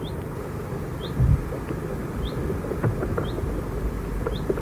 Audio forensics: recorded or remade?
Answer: recorded